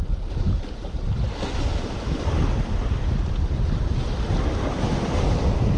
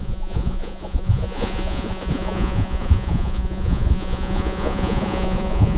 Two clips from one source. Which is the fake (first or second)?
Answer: second